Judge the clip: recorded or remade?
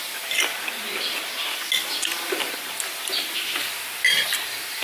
remade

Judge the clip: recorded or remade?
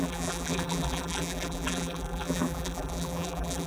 remade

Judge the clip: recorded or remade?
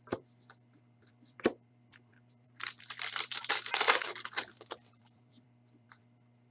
remade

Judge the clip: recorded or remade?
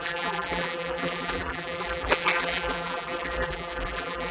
remade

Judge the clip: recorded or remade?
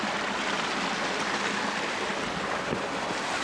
recorded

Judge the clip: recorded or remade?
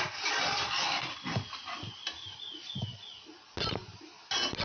recorded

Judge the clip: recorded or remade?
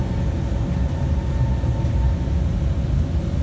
recorded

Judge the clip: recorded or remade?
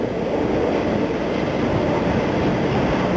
remade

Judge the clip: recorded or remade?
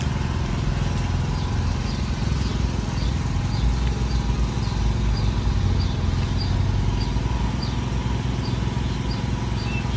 recorded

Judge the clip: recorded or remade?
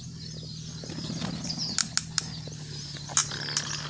recorded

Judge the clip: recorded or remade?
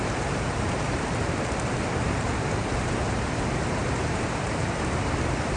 remade